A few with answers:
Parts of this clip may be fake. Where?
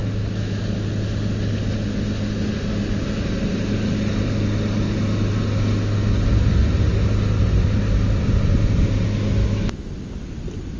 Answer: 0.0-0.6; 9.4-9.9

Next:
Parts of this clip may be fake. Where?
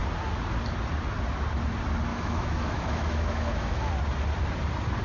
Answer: 2.1-3.9